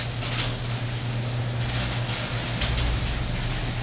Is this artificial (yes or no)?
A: no